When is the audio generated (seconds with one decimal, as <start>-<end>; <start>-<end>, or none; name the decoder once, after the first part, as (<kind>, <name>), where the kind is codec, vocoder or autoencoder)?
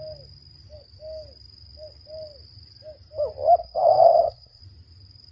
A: 3.6-4.6 (codec, SNAC)